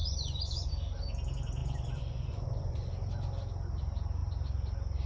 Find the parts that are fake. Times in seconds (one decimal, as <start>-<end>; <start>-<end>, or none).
0.0-0.7; 1.6-2.9